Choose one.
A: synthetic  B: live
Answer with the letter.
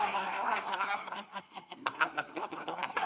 A